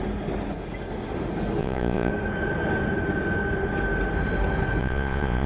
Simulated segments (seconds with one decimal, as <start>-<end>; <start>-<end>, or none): 1.6-2.1; 4.8-5.5